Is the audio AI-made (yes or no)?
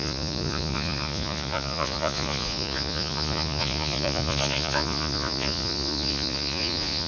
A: yes